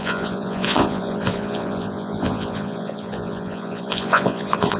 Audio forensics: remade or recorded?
remade